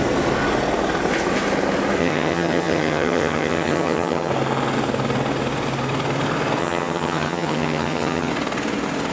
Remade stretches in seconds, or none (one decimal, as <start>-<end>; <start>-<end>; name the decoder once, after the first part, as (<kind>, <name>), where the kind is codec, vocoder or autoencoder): 2.0-4.3 (vocoder, HiFi-GAN); 6.6-8.3